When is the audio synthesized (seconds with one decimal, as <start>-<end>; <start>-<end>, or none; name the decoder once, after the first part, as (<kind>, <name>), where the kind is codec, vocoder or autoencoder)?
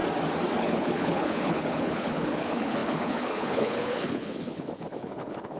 0.6-5.6 (codec, HILCodec)